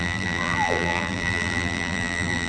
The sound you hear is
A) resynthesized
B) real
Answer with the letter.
A